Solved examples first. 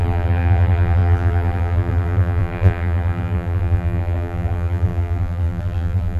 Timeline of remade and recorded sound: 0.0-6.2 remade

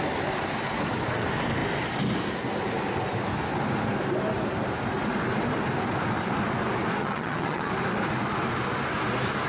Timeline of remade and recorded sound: 0.0-7.0 recorded; 7.0-7.7 remade; 7.7-9.5 recorded

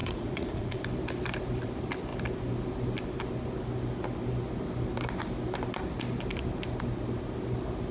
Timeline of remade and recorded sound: 0.0-0.8 remade; 0.8-7.9 recorded

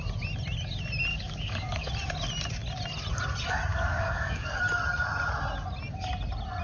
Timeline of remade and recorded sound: 0.0-1.1 recorded; 1.1-1.9 remade; 1.9-3.7 recorded; 3.7-4.6 remade; 4.6-6.6 recorded

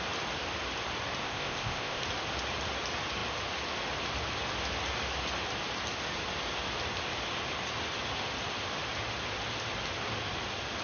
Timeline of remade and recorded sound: 0.0-1.2 recorded; 1.2-2.0 remade; 2.0-10.8 recorded